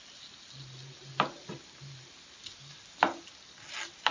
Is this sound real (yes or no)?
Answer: yes